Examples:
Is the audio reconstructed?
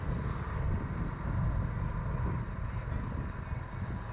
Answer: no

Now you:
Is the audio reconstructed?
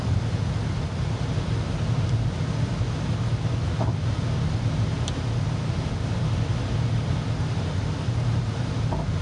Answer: no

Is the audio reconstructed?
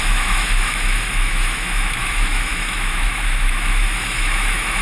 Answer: yes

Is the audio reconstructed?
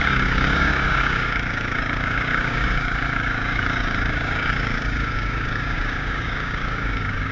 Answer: yes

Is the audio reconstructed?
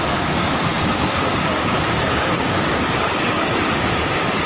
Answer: yes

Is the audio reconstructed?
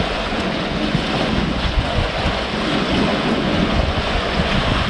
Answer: yes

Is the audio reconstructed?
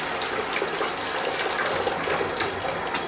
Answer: no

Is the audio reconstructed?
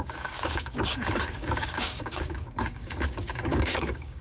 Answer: yes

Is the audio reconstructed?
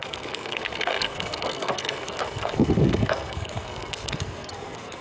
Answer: yes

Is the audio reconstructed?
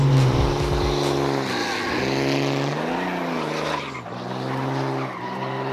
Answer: no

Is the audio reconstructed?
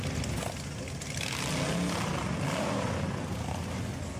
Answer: no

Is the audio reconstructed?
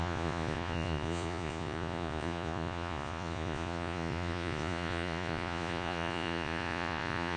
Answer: yes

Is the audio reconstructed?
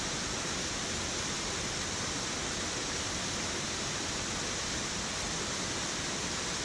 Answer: yes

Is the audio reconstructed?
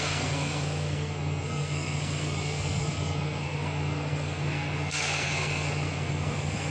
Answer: yes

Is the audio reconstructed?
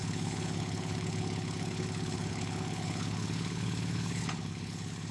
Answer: yes